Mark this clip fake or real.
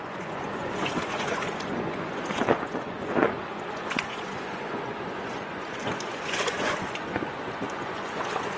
fake